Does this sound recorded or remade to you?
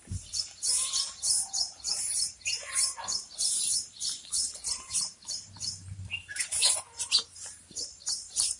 remade